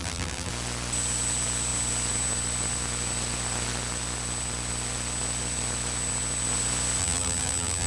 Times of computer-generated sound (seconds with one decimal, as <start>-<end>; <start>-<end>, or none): 0.0-0.5; 7.0-7.9

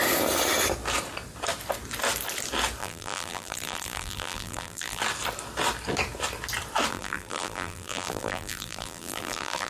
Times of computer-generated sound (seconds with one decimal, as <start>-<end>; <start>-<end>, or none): 2.8-5.0; 6.9-9.7

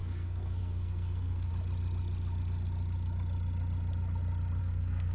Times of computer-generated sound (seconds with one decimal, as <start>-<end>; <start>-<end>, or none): 0.0-1.5; 4.6-5.1

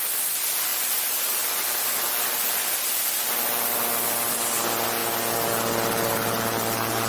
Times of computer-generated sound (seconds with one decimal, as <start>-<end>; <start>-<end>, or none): none